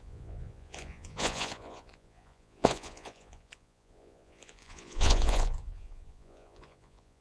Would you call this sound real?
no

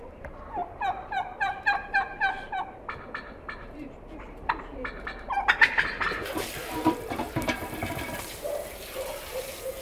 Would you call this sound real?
no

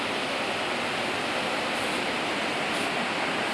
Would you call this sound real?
yes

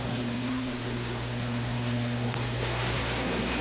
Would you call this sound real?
no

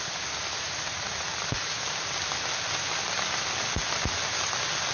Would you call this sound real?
yes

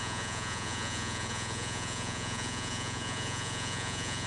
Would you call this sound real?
no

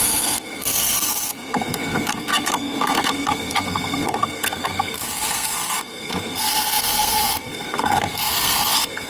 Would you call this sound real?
no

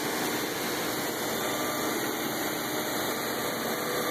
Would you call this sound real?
yes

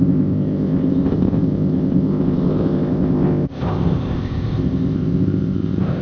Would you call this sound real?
no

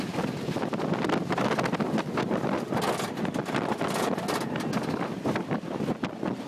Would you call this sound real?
yes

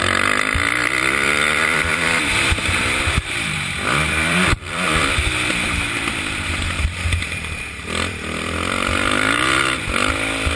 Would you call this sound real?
no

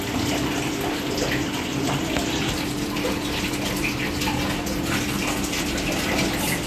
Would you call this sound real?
yes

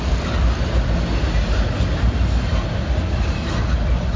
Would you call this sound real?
yes